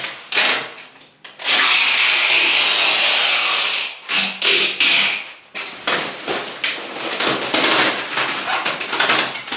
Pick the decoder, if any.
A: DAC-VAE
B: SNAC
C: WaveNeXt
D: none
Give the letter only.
D